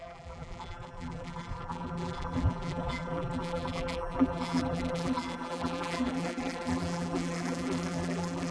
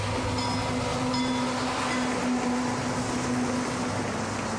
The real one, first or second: second